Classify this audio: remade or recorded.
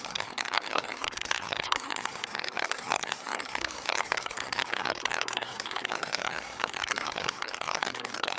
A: remade